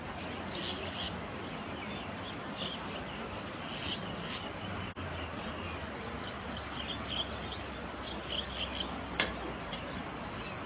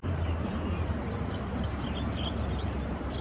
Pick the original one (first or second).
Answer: first